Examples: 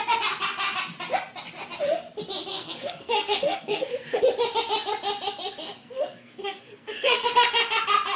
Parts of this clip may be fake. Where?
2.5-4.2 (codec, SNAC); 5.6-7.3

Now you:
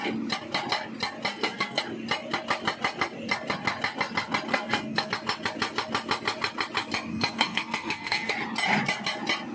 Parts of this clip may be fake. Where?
1.3-1.8 (codec, SNAC); 4.5-5.1; 7.1-8.3